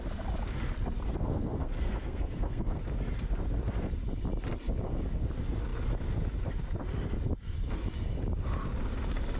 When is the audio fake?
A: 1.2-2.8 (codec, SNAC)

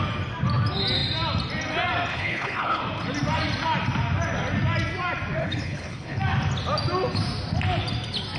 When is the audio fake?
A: 2.1-2.8 (codec, HILCodec); 5.4-6.2

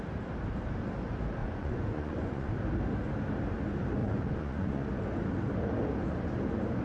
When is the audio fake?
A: 1.4-2.5 (vocoder, Vocos); 4.0-4.9

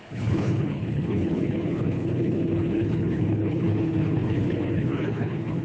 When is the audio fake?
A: 0.0-5.6 (codec, HILCodec)

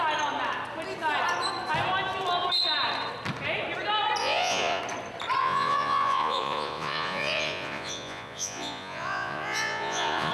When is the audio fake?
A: 4.2-4.8 (vocoder, Vocos); 5.4-10.3

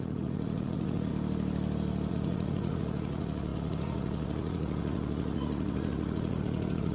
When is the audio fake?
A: 0.0-1.1 (vocoder, Vocos); 2.1-6.9

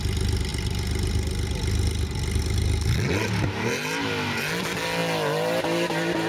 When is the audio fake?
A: none